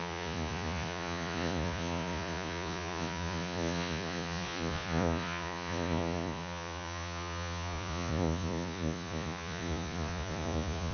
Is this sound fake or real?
fake